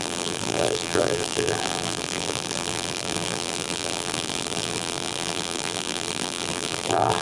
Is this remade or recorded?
remade